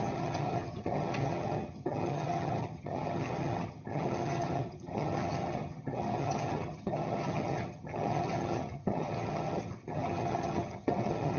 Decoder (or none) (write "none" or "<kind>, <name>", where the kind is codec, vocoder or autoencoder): vocoder, HiFi-GAN